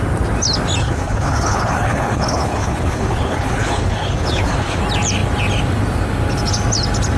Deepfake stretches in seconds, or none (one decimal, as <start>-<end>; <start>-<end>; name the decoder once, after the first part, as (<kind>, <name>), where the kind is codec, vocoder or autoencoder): 0.8-4.8 (codec, HILCodec)